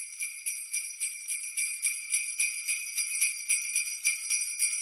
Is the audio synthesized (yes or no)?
no